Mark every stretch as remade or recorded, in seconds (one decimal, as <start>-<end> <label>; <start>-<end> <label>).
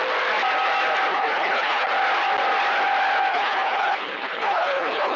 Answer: 0.0-1.1 recorded; 1.1-1.9 remade; 1.9-3.3 recorded; 3.3-5.2 remade